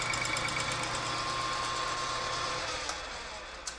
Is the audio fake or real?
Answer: real